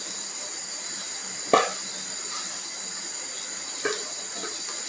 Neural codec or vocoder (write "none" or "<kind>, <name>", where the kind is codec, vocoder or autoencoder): none